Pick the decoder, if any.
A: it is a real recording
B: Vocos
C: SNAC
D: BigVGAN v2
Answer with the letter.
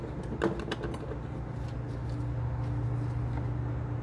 A